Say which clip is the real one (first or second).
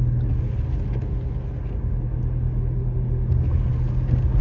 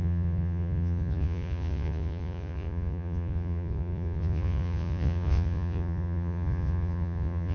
first